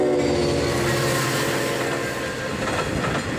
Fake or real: real